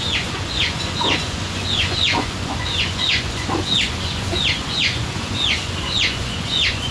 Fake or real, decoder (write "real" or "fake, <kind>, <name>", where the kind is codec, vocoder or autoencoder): fake, vocoder, Vocos